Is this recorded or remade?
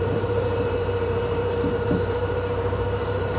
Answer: remade